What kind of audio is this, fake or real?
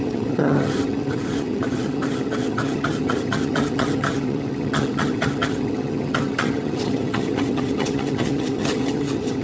fake